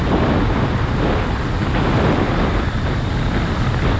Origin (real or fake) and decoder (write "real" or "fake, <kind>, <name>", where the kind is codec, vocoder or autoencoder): real